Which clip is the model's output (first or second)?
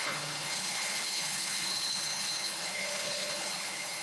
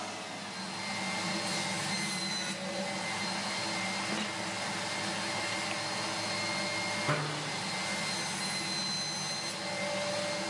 first